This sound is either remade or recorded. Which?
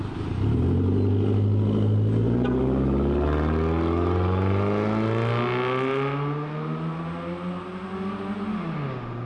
recorded